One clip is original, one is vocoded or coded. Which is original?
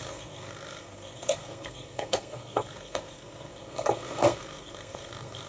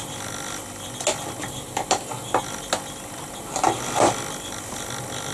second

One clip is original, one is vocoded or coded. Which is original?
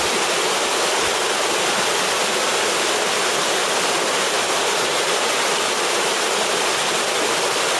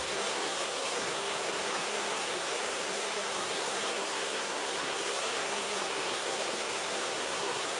first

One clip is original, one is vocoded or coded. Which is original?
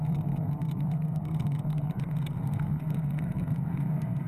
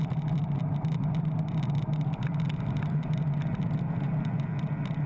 second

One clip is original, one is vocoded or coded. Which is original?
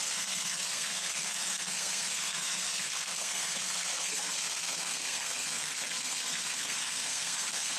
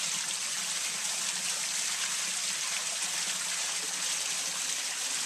second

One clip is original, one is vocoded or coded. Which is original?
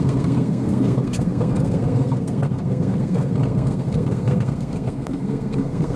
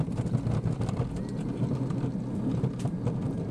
second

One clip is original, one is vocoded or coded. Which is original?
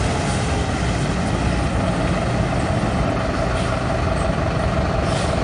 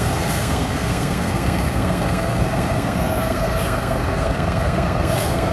first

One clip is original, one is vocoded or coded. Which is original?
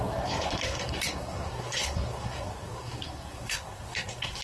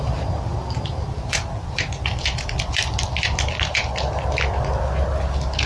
second